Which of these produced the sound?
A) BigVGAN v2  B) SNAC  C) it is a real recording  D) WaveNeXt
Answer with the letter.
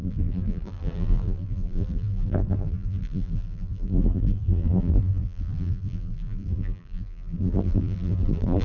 A